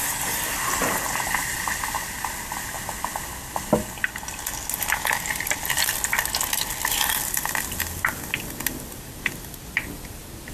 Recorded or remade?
recorded